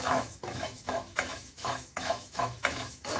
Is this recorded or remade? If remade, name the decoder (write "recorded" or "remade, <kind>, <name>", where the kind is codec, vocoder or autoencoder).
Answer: remade, autoencoder, DAC-VAE